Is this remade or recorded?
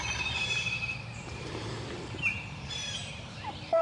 remade